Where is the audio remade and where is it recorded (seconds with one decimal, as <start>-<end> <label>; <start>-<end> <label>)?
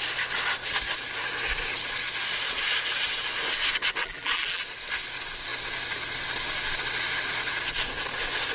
0.0-4.0 recorded; 4.0-4.6 remade; 4.6-8.5 recorded